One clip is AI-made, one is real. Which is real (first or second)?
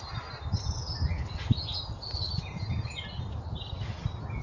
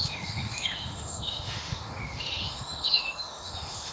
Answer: first